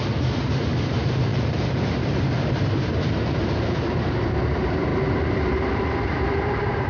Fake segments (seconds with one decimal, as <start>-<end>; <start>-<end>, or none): 0.0-6.9